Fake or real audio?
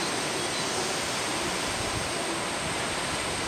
real